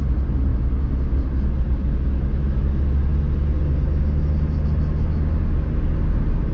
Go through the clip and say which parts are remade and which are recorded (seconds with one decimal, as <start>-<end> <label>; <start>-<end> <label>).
0.0-6.5 recorded